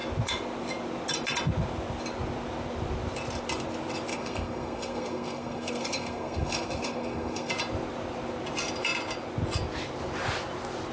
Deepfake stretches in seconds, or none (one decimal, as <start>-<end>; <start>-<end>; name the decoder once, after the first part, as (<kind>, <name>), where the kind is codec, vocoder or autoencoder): 4.1-7.5 (codec, SNAC)